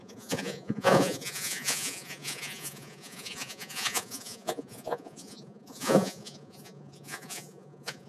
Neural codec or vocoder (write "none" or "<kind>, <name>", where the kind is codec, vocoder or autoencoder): vocoder, Vocos